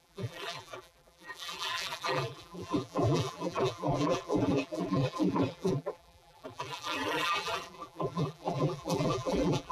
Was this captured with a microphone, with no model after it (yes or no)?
no